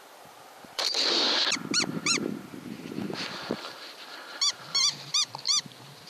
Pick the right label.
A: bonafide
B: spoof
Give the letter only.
B